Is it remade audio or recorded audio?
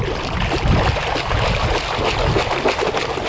recorded